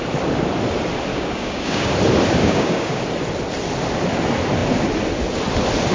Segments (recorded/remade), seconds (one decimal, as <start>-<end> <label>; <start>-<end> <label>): 0.0-1.1 recorded; 1.1-1.9 remade; 1.9-2.4 recorded; 2.4-3.0 remade; 3.0-5.9 recorded